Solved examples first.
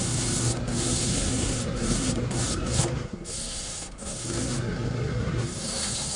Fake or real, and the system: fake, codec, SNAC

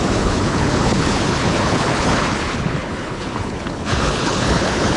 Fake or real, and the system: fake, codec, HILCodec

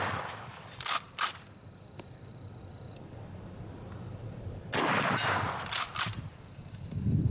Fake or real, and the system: fake, vocoder, BigVGAN v2